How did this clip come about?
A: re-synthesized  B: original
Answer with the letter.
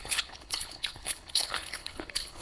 A